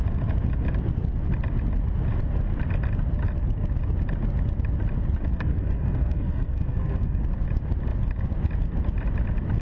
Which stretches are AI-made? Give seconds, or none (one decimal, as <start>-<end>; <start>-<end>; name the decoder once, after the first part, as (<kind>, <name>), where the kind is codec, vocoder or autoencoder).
5.3-7.2 (codec, SNAC)